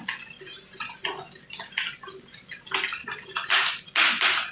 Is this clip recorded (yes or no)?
yes